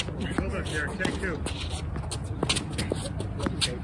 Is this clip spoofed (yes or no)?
no